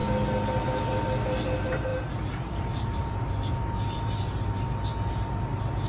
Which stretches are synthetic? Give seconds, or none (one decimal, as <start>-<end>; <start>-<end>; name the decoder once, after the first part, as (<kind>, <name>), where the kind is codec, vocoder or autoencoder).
none